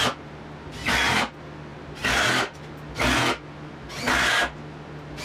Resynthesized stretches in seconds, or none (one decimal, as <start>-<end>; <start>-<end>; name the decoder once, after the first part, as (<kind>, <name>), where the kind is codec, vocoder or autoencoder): none